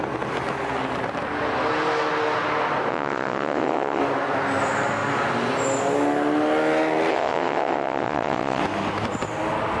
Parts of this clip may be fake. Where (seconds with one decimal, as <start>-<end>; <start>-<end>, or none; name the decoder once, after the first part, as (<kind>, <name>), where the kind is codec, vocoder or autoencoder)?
2.9-4.0 (vocoder, WaveNeXt); 7.1-8.6